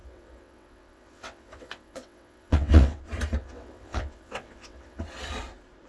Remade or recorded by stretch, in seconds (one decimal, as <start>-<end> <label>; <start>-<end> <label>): 0.0-3.0 remade; 3.0-3.4 recorded; 3.4-5.0 remade; 5.0-5.9 recorded